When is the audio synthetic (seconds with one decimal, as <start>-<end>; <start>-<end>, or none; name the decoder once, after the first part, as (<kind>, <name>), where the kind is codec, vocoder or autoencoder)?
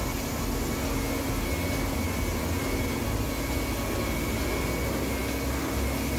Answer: none